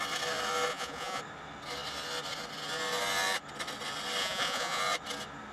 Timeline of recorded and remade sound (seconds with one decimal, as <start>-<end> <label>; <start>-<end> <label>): 0.0-0.7 recorded; 0.7-1.2 remade; 1.2-4.2 recorded; 4.2-4.8 remade; 4.8-5.5 recorded